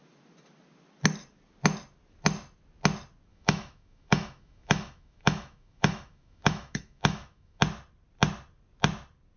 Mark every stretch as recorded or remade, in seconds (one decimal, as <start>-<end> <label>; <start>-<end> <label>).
0.0-3.3 recorded; 3.3-7.6 remade; 7.6-9.4 recorded